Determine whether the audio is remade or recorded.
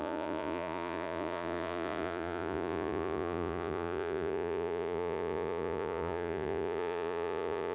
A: remade